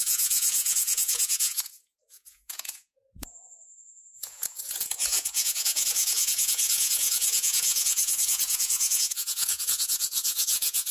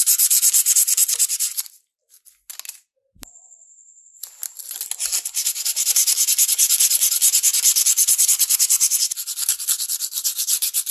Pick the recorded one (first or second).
second